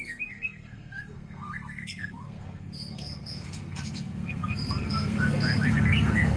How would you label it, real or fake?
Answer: fake